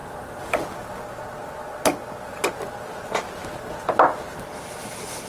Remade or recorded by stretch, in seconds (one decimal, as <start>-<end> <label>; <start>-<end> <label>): 0.0-5.3 recorded